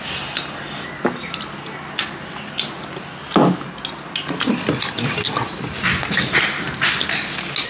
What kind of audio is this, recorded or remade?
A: recorded